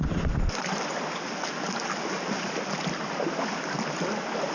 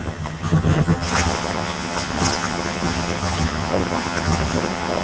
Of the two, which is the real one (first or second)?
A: first